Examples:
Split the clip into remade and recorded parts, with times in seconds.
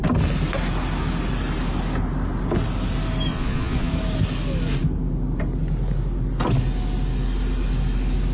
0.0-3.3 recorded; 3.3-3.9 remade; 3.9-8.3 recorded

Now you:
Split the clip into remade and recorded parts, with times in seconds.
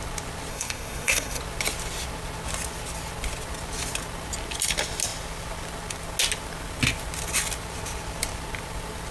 0.0-0.5 recorded; 0.5-1.4 remade; 1.4-9.1 recorded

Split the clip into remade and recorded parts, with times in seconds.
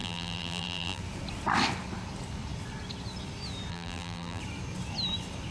0.0-1.0 remade; 1.0-3.7 recorded; 3.7-4.4 remade; 4.4-5.5 recorded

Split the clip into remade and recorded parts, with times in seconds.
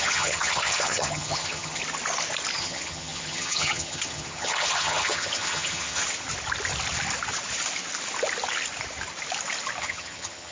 0.0-1.8 remade; 1.8-2.6 recorded; 2.6-6.0 remade; 6.0-9.8 recorded; 9.8-10.5 remade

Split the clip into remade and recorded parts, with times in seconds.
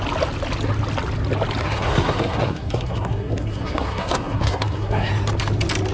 0.0-1.6 recorded; 1.6-5.1 remade; 5.1-5.9 recorded